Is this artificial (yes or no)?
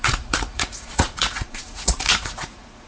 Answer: yes